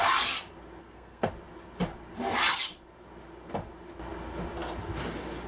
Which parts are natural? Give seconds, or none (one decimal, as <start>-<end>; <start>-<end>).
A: 0.0-0.8; 1.3-5.5

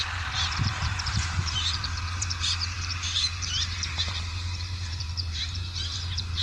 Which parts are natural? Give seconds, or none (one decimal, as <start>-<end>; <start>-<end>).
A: none

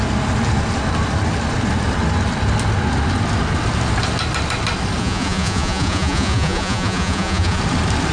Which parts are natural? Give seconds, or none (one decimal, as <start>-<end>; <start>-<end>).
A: 0.0-5.0; 7.6-8.1

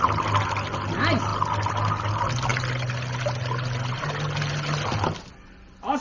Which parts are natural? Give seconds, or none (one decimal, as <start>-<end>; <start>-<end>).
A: 0.0-6.0

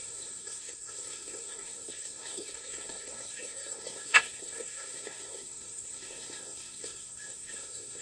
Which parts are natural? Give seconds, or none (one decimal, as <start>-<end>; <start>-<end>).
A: none

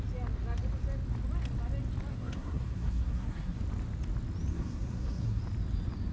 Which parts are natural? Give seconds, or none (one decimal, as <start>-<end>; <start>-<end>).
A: 0.0-2.1; 3.6-4.5; 5.4-6.1

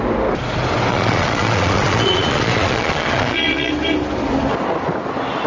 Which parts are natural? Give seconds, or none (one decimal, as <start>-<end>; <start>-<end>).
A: 0.0-0.9; 3.7-5.5